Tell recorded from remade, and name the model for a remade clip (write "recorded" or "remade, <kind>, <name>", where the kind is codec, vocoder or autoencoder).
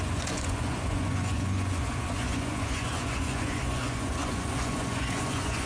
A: remade, vocoder, Vocos